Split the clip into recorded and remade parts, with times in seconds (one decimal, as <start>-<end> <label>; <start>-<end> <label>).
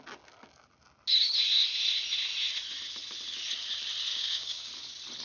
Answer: 0.0-4.1 recorded; 4.1-4.7 remade; 4.7-5.2 recorded